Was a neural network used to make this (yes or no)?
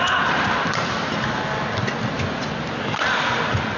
no